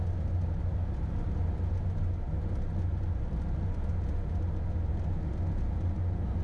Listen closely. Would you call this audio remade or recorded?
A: recorded